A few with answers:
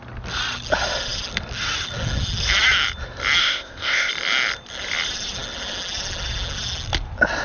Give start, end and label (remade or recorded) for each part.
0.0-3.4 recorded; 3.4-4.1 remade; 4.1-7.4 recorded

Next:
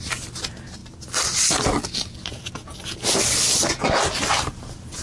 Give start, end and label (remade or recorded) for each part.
0.0-5.0 recorded

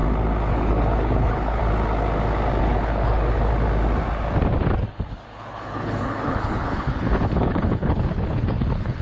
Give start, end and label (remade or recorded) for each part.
0.0-0.5 recorded; 0.5-1.6 remade; 1.6-2.6 recorded; 2.6-3.5 remade; 3.5-4.8 recorded; 4.8-9.0 remade

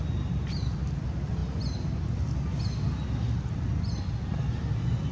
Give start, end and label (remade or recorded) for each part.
0.0-5.1 recorded

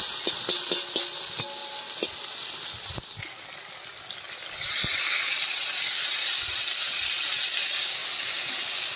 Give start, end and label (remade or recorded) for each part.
0.0-9.0 recorded

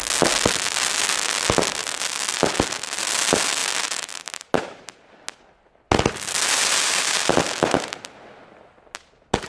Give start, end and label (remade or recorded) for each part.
0.0-9.5 recorded

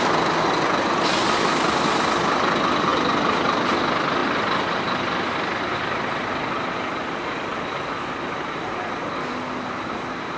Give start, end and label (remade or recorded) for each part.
0.0-10.4 recorded